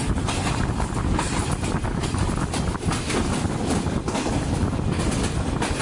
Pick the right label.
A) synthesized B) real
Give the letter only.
B